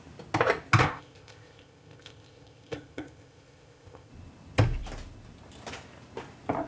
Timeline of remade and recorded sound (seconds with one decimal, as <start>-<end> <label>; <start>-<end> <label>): 0.0-0.8 recorded; 0.8-4.1 remade; 4.1-6.7 recorded